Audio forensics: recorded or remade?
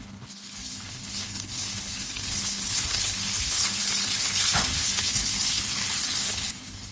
remade